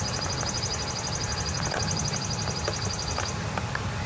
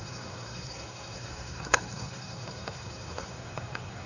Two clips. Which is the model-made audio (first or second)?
second